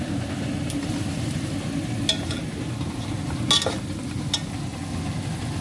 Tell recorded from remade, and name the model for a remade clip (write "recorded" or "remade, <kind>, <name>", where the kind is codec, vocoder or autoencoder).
recorded